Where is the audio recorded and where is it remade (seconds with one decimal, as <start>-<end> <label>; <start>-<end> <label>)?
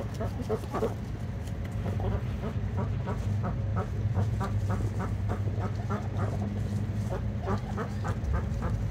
0.0-3.7 recorded; 3.7-4.4 remade; 4.4-8.9 recorded